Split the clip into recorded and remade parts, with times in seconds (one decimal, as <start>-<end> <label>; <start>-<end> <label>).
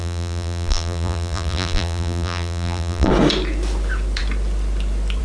0.0-3.1 remade; 3.1-5.2 recorded